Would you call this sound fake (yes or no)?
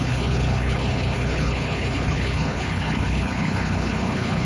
yes